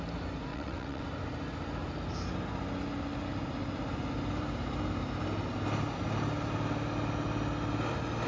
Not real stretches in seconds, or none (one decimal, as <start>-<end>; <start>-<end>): 0.5-1.0